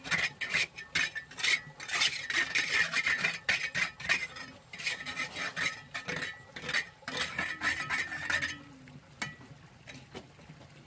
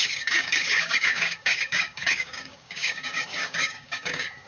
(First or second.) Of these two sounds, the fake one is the second